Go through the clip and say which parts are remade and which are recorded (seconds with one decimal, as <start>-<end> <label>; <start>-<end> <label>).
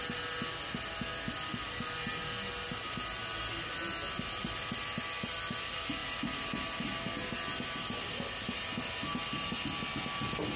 0.0-10.6 recorded